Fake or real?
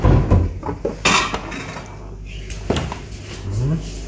real